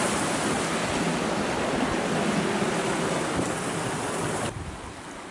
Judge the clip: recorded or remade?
recorded